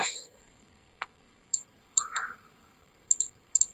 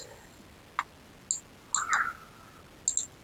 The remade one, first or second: first